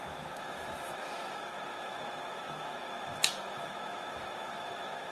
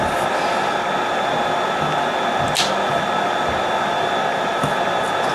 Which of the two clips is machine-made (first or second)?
first